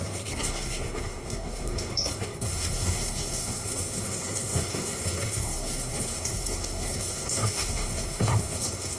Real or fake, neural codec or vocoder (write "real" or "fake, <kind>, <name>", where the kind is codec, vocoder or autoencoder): fake, codec, SNAC